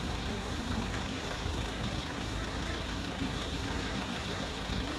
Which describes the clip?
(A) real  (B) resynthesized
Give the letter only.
B